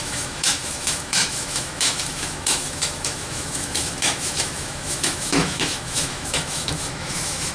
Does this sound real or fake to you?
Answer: fake